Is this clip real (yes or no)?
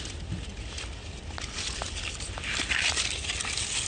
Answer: yes